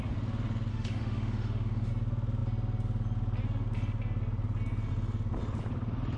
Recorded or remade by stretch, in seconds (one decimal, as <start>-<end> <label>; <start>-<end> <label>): 0.0-0.7 recorded; 0.7-1.9 remade; 1.9-6.2 recorded